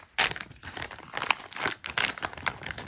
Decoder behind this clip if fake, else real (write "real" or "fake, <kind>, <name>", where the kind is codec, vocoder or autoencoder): real